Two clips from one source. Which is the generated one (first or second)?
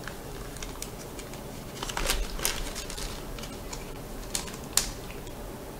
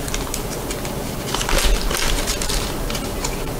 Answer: second